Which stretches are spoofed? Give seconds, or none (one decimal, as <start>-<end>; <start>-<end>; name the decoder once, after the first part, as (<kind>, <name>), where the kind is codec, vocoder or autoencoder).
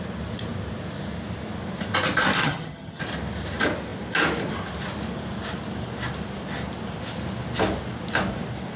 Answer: 2.4-3.0 (vocoder, HiFi-GAN)